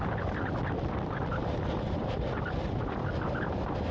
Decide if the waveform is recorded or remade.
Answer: recorded